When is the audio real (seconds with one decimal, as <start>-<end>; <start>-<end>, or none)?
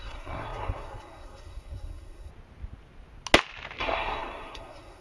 2.3-3.8